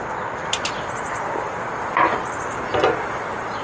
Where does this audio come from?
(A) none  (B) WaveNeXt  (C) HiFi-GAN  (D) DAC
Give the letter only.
A